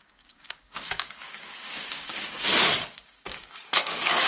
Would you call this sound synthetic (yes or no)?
yes